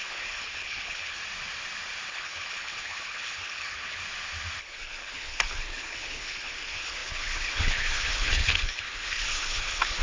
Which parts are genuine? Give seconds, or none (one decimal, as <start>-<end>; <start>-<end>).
1.2-2.1; 4.0-4.6